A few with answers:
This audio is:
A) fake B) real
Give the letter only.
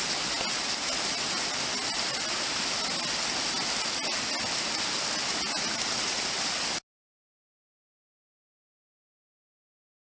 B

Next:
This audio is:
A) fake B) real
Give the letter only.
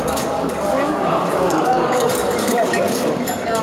A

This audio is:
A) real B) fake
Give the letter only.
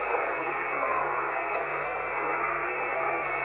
B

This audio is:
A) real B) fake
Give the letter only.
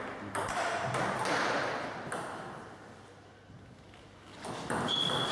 A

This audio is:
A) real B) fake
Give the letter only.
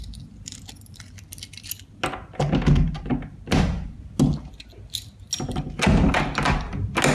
A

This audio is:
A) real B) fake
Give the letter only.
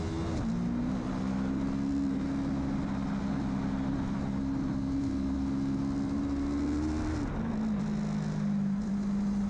A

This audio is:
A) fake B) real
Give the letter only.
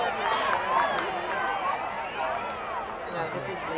B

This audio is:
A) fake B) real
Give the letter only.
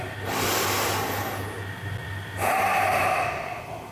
B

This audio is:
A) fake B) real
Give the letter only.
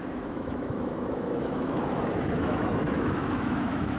A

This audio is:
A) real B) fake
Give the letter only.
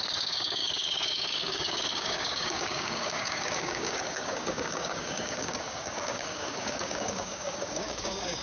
B